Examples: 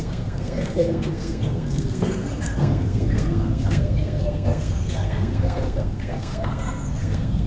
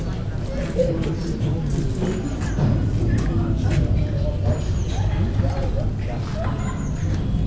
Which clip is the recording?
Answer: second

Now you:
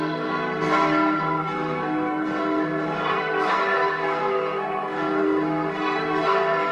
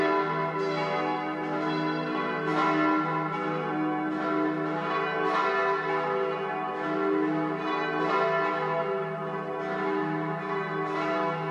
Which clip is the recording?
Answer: second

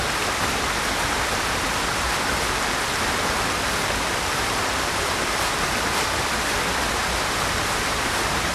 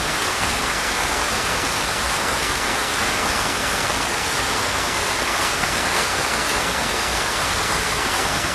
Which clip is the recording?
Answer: first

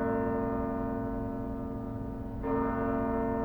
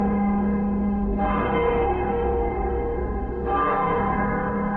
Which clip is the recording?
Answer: first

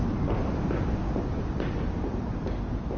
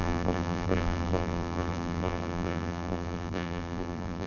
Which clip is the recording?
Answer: first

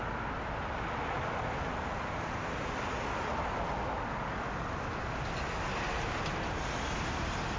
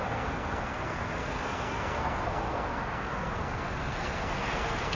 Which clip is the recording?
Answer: first